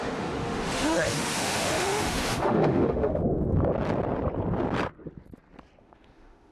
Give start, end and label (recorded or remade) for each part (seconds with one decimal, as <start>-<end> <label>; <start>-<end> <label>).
0.0-3.2 remade; 3.2-5.8 recorded; 5.8-6.5 remade